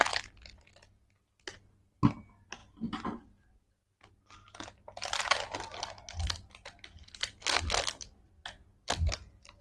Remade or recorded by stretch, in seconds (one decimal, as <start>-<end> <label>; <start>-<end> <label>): 0.0-8.7 recorded; 8.7-9.6 remade